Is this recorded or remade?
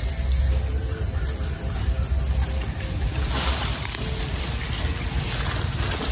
recorded